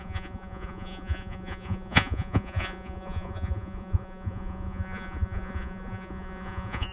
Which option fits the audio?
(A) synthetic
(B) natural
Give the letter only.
A